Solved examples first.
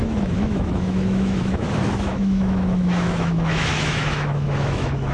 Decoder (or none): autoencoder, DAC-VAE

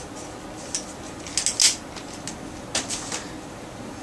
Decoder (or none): none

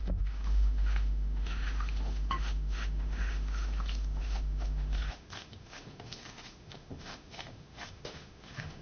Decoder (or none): autoencoder, DAC-VAE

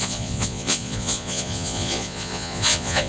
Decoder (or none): vocoder, Vocos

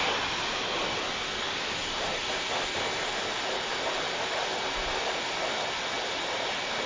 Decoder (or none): none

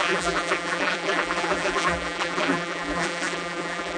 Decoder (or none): vocoder, BigVGAN v2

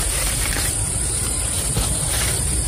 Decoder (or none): vocoder, BigVGAN v2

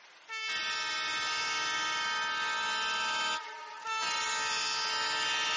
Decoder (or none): none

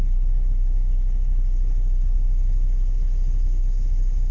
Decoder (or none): codec, HILCodec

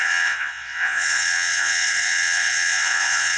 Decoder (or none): vocoder, WaveNeXt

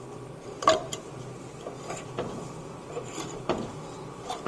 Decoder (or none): vocoder, BigVGAN v2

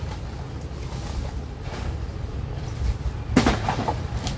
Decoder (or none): none